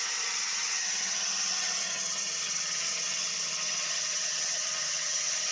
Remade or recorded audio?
remade